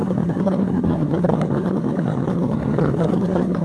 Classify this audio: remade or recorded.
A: remade